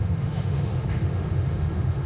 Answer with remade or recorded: remade